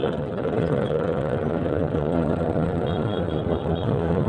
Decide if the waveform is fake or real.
fake